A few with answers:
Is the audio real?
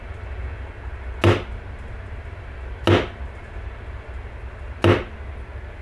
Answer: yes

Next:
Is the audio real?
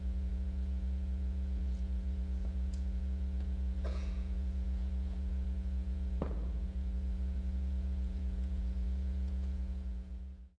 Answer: no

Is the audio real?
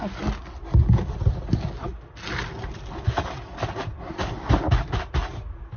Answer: yes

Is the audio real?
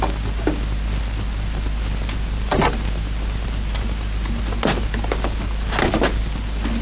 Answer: yes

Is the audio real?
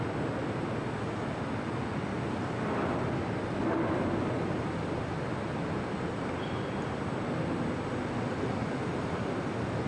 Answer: yes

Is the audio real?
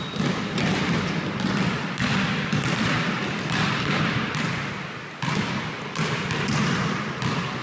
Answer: yes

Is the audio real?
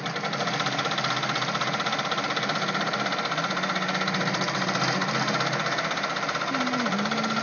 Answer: yes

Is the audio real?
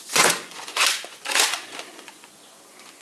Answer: no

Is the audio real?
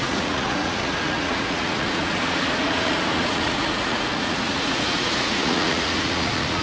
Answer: no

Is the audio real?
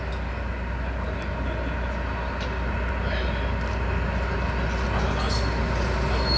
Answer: yes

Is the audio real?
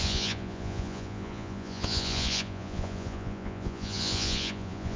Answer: no